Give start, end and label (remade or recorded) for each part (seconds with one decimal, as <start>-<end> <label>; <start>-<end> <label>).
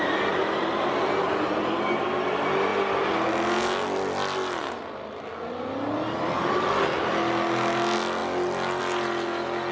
0.0-9.7 recorded